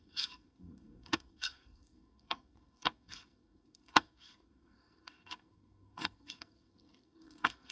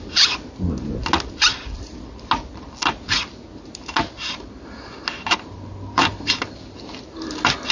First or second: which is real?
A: second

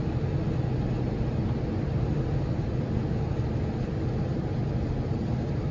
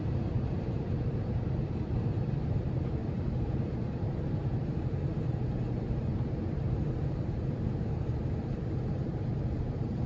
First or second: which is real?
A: first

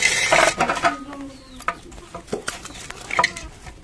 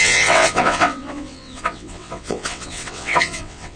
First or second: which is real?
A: first